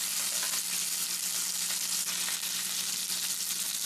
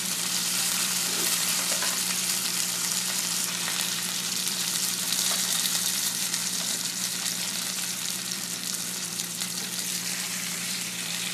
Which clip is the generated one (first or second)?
second